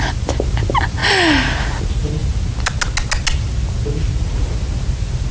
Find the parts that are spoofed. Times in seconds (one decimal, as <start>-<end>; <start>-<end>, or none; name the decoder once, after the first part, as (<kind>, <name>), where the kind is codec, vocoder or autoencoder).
none